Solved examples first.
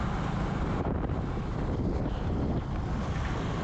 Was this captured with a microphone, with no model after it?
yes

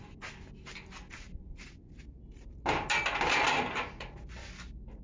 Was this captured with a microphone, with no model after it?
yes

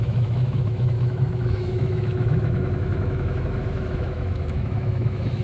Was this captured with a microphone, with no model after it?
no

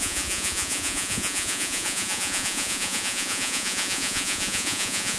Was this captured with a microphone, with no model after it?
no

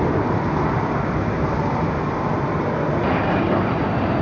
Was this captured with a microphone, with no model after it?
yes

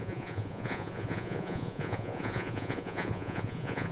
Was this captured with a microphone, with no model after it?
no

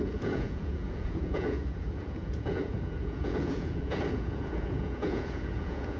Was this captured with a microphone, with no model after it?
no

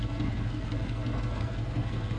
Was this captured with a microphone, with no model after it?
no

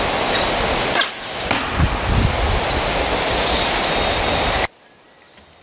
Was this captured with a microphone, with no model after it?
yes